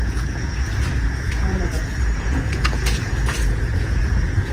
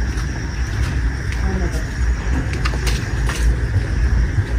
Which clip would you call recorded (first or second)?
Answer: second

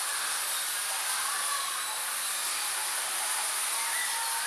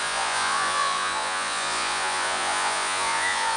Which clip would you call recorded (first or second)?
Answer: first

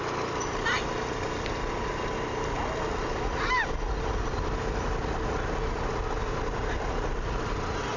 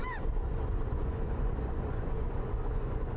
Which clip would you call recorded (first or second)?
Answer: first